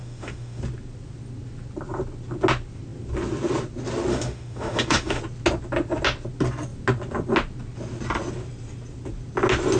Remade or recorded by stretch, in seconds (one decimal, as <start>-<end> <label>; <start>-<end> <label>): 0.0-0.6 remade; 0.6-4.1 recorded; 4.1-5.2 remade; 5.2-9.8 recorded